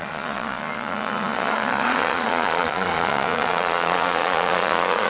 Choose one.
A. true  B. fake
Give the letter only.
B